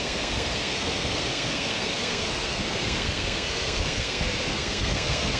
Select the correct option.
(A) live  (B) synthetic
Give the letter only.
B